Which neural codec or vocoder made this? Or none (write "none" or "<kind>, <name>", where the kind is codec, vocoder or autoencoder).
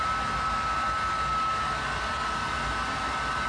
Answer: none